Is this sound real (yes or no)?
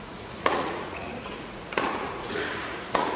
no